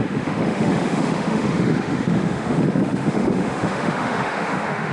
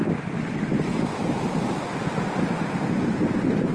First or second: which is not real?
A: first